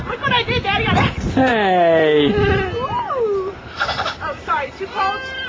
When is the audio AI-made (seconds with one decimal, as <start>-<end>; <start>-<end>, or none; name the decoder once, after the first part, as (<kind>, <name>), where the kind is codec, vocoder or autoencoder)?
3.5-5.0 (vocoder, BigVGAN v2)